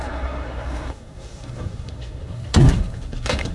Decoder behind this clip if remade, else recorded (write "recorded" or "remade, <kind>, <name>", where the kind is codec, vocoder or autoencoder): remade, codec, SNAC